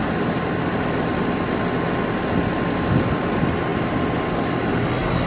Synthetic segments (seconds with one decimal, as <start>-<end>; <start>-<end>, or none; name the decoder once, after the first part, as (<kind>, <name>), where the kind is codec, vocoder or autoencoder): none